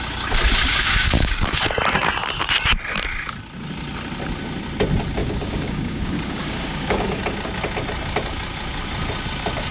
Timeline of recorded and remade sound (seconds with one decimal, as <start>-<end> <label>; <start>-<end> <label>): 0.0-0.7 recorded; 0.7-1.6 remade; 1.6-5.2 recorded; 5.2-7.2 remade; 7.2-9.7 recorded